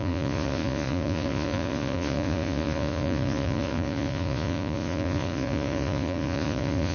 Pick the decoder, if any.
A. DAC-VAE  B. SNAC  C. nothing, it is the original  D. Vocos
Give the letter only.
D